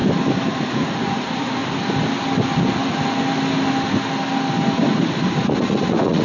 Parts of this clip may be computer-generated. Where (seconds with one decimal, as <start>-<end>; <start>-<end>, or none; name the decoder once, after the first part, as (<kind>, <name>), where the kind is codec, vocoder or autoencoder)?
0.5-1.6 (vocoder, Vocos); 5.3-6.2

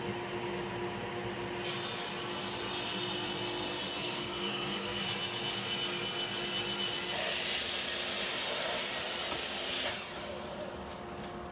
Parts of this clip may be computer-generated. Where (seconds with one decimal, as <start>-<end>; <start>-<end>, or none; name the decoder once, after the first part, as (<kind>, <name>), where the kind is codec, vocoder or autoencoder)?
4.0-5.0 (codec, SNAC)

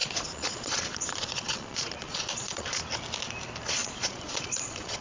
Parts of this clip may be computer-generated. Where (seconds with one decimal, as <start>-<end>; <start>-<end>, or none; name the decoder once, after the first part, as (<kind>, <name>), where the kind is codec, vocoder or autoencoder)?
0.0-2.8 (vocoder, Vocos); 3.8-5.0

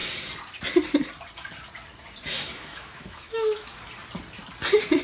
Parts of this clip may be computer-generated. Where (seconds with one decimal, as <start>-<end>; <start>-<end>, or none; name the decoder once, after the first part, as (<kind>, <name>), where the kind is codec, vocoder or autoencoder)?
2.3-3.7 (autoencoder, DAC-VAE)

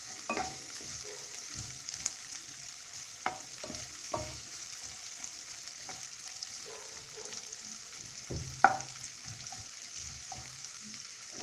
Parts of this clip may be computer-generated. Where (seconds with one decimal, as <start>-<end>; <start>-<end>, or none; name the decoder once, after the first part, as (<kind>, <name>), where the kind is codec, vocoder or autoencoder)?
0.0-1.0 (autoencoder, DAC-VAE); 4.0-4.6; 10.0-11.0

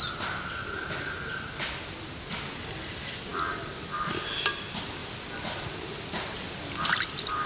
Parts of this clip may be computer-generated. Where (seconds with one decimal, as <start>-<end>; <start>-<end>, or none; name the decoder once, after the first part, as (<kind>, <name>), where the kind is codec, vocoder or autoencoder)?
none

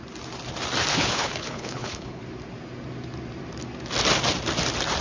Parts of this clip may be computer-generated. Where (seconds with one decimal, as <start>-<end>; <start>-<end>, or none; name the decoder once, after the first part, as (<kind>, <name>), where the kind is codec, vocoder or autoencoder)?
0.9-2.2 (codec, HILCodec)